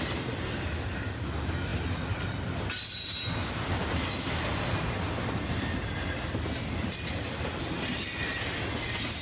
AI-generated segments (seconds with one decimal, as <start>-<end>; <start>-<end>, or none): none